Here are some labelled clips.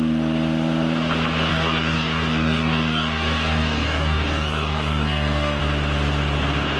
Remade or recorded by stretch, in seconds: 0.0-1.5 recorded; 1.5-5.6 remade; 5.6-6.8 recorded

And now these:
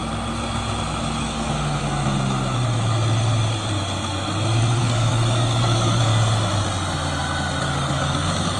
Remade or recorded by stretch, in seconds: 0.0-1.2 recorded; 1.2-1.8 remade; 1.8-4.8 recorded; 4.8-6.1 remade; 6.1-7.6 recorded; 7.6-8.6 remade

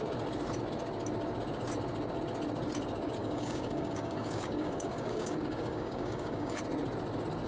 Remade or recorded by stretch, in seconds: 0.0-3.2 recorded; 3.2-6.6 remade; 6.6-7.5 recorded

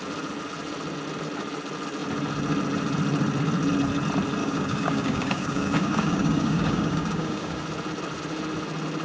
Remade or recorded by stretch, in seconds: 0.0-4.4 recorded; 4.4-7.6 remade; 7.6-9.0 recorded